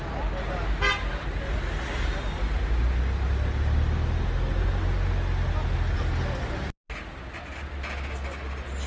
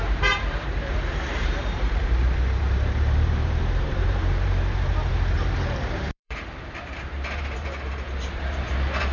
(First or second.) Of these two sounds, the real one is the first